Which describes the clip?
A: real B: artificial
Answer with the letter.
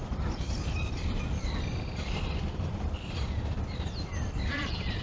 B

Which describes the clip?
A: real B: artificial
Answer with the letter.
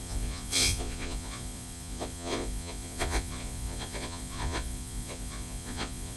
B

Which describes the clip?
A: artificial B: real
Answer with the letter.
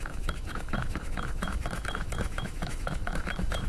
A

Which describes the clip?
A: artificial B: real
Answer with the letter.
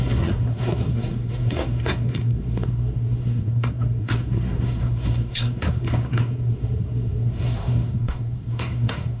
A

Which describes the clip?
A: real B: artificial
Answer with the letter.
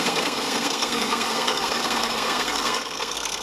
B